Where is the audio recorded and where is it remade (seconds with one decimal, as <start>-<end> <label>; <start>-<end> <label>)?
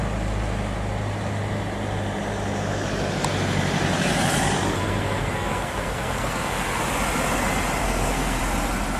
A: 0.0-4.7 recorded; 4.7-6.8 remade; 6.8-7.8 recorded; 7.8-8.4 remade; 8.4-9.0 recorded